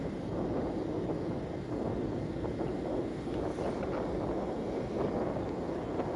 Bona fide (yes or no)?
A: yes